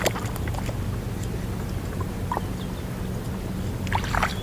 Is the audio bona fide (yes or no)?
yes